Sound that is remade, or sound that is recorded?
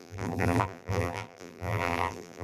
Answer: remade